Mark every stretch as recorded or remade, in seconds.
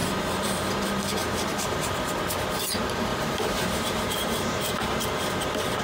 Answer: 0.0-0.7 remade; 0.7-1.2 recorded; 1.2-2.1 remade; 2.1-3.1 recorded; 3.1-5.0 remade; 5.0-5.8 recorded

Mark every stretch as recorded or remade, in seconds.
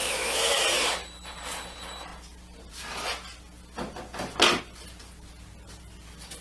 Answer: 0.0-0.6 remade; 0.6-6.4 recorded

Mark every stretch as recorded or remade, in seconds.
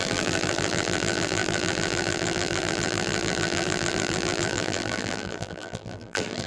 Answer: 0.0-6.5 remade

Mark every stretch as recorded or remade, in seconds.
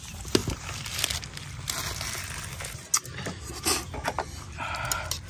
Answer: 0.0-5.3 recorded